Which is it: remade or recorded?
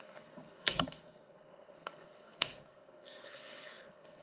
remade